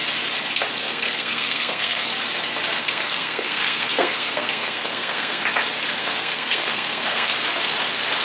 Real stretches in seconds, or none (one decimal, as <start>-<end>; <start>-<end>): 0.0-0.8; 2.1-2.8; 5.4-6.0; 7.3-8.2